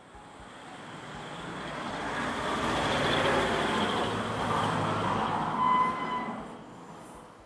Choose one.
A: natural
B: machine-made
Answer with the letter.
A